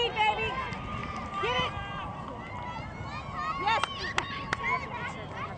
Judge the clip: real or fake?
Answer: real